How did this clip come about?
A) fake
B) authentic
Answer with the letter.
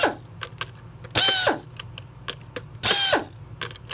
B